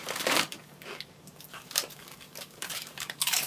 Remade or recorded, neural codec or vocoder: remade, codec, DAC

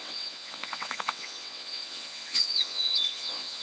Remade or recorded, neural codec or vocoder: remade, vocoder, WaveNeXt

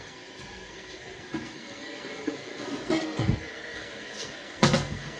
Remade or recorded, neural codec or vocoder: remade, codec, SNAC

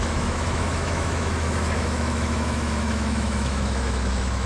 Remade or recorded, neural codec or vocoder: remade, autoencoder, DAC-VAE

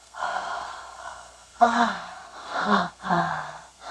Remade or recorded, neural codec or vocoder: remade, codec, SNAC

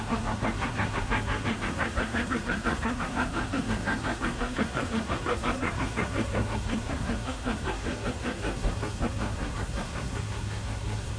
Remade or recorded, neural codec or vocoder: remade, codec, SNAC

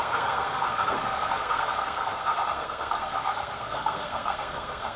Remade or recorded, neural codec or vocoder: remade, codec, SNAC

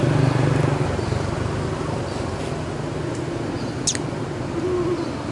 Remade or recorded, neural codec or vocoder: recorded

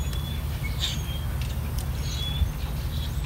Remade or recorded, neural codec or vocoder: recorded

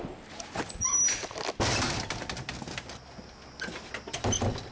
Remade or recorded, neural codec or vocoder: recorded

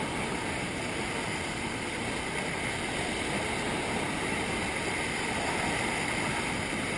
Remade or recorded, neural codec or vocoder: recorded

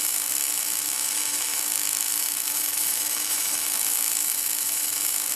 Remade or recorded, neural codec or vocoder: remade, autoencoder, DAC-VAE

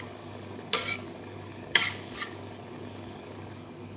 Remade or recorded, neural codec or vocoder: remade, codec, DAC